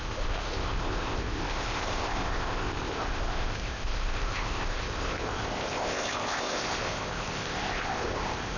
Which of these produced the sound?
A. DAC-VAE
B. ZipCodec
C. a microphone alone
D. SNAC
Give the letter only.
B